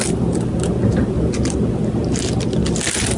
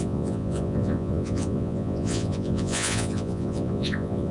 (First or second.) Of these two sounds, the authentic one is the first